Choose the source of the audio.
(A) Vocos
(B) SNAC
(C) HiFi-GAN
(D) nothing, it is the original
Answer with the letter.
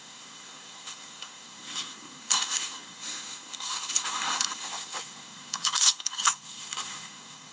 B